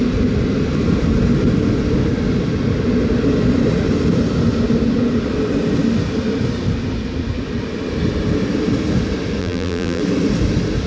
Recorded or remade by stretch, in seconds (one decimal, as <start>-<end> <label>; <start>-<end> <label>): 0.0-9.4 recorded; 9.4-10.0 remade; 10.0-10.9 recorded